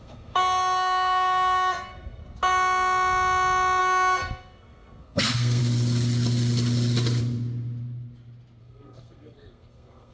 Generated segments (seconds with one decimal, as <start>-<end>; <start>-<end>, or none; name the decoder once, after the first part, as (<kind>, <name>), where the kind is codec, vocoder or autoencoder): 0.0-2.2 (codec, SNAC); 3.8-5.6; 8.6-10.1